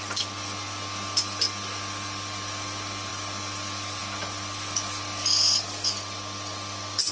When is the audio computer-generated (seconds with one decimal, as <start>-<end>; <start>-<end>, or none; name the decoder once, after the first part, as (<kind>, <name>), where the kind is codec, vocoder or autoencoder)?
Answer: none

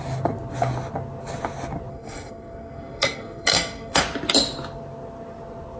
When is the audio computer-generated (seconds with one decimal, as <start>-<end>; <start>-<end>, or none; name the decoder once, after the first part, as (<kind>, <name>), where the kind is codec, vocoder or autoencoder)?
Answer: 1.9-4.0 (codec, SNAC)

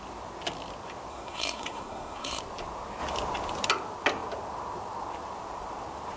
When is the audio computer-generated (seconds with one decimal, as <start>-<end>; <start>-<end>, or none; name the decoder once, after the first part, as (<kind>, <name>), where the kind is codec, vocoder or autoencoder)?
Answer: 1.1-2.4 (codec, SNAC)

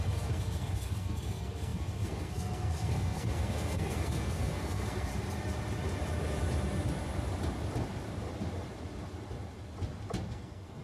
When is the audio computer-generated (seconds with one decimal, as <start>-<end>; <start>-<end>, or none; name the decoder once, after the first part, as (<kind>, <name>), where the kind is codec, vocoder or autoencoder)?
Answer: 0.0-5.1 (codec, SNAC); 10.3-10.8